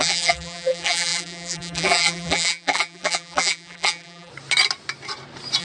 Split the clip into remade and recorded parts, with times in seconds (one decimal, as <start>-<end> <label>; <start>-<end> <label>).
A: 0.0-4.3 remade; 4.3-5.6 recorded